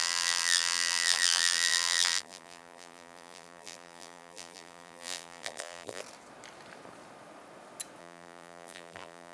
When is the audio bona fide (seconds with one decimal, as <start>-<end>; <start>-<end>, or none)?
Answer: 6.0-8.0